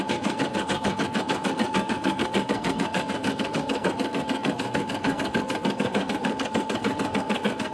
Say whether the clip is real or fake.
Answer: fake